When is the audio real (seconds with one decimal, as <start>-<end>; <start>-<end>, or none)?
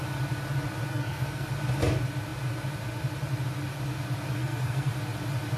0.0-0.9; 1.5-4.4; 4.9-5.6